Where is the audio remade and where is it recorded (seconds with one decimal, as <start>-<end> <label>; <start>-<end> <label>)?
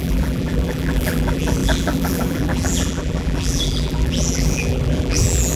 0.0-5.6 remade